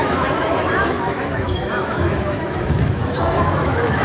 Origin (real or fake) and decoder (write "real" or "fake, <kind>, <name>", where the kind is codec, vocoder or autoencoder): fake, autoencoder, DAC-VAE